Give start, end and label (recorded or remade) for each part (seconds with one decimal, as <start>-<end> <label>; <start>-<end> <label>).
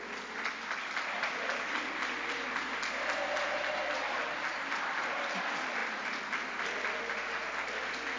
0.0-8.2 recorded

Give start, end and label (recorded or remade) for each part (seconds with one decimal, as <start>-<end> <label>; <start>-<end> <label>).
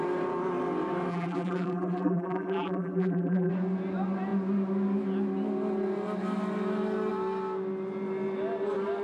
0.0-1.1 recorded; 1.1-3.5 remade; 3.5-9.0 recorded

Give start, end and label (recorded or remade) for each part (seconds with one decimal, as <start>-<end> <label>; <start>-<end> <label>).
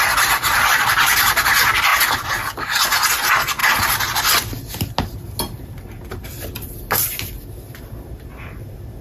0.0-9.0 recorded